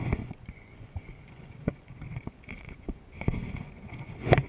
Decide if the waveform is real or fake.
fake